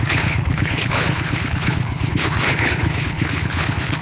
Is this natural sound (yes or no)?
no